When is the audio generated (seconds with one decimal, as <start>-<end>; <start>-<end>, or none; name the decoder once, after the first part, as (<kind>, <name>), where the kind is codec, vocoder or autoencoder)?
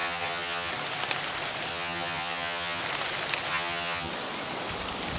0.0-0.7 (vocoder, HiFi-GAN); 1.7-2.8; 3.5-4.1